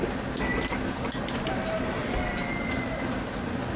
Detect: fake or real real